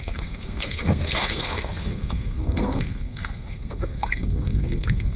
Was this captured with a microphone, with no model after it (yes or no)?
no